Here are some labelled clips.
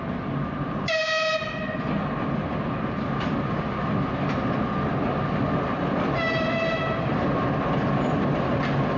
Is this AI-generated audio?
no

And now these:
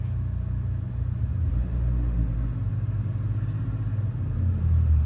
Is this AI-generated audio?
no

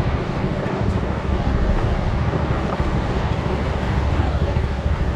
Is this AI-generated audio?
yes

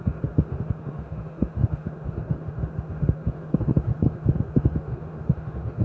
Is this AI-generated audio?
yes